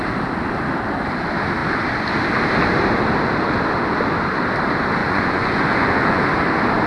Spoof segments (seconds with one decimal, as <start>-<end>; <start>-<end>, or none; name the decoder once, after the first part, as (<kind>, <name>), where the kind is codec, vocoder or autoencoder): 5.0-6.2 (vocoder, Vocos)

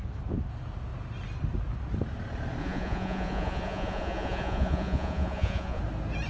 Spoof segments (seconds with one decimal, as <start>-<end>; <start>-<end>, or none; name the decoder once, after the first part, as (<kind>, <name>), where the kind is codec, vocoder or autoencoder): 2.6-5.8 (vocoder, Vocos)

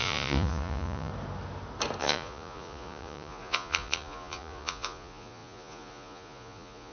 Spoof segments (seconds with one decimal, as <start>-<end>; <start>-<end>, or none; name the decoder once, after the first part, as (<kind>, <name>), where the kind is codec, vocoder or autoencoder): 0.0-1.1 (vocoder, Vocos); 2.0-6.9